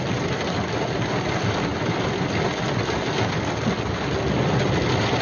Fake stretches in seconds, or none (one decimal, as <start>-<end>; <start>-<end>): none